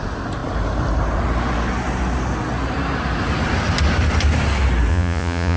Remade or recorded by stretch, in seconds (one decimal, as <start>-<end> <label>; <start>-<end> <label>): 0.0-4.9 recorded; 4.9-5.6 remade